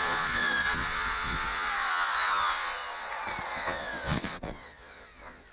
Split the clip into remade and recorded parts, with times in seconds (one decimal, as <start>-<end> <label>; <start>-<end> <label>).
0.0-3.1 remade; 3.1-3.5 recorded; 3.5-5.5 remade